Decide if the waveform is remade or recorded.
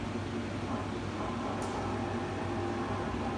recorded